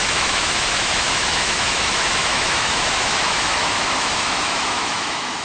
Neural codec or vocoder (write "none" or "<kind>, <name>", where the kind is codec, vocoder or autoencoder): autoencoder, DAC-VAE